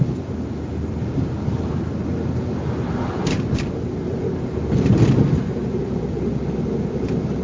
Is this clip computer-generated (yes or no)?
no